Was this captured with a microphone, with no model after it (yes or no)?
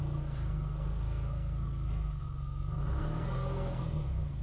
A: no